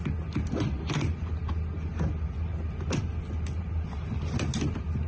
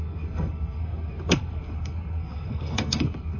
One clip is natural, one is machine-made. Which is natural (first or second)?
first